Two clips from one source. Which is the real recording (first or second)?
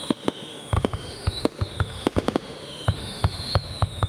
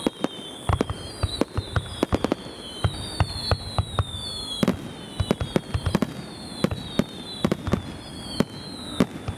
second